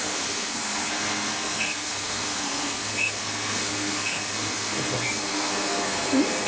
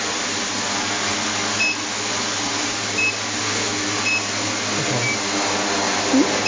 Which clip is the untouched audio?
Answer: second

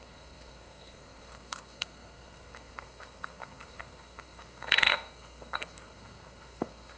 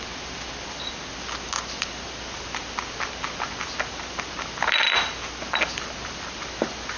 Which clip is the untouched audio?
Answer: second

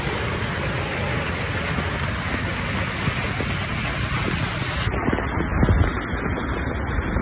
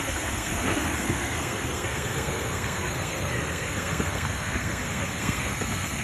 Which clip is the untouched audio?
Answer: first